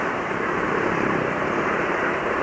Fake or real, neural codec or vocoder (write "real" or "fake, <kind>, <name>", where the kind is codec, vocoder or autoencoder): fake, vocoder, BigVGAN v2